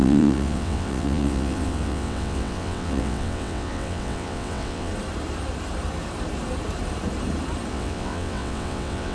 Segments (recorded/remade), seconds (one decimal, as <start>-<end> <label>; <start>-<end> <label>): 0.0-4.9 remade; 4.9-7.7 recorded; 7.7-9.1 remade